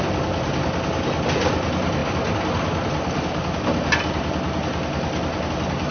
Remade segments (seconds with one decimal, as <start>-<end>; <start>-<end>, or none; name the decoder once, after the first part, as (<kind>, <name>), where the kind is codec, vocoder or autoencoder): none